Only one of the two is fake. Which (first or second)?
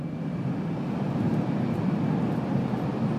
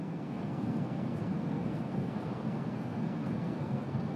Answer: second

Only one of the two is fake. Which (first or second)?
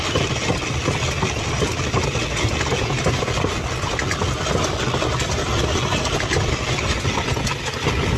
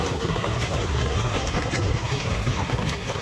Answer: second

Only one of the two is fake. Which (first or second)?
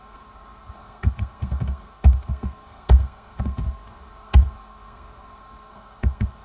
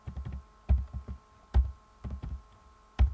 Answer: first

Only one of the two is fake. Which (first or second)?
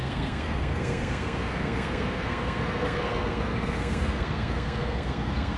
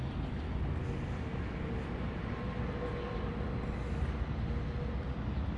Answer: first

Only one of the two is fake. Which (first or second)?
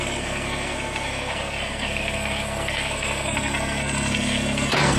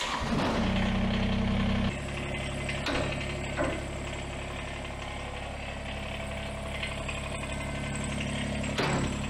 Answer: first